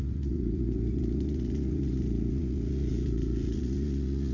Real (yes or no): no